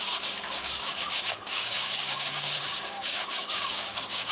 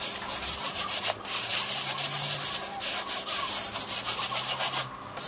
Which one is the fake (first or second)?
first